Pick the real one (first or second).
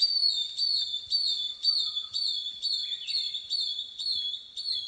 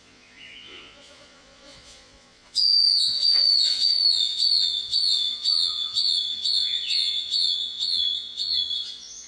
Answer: first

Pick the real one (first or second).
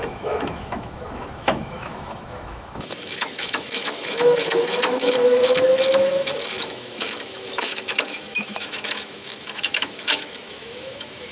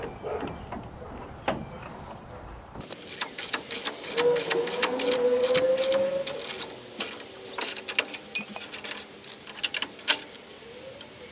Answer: second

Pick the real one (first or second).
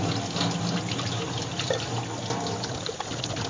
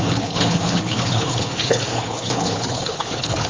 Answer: first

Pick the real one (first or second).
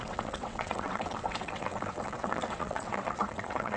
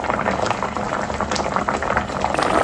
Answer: second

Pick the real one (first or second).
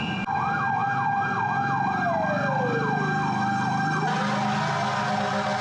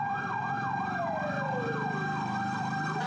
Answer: first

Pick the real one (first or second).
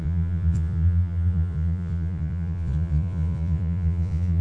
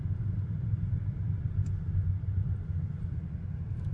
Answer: second